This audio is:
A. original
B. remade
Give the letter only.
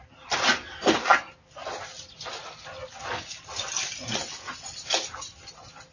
A